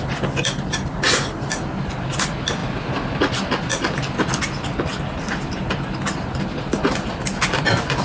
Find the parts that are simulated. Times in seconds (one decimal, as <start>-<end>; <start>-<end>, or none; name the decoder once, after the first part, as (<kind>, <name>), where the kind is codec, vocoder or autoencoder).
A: none